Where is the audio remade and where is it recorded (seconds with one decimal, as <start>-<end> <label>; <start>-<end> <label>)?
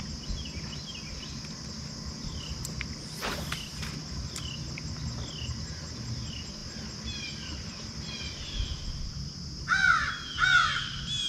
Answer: 0.0-11.3 recorded